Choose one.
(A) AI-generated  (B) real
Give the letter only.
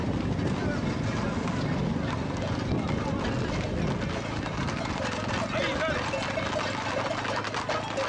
B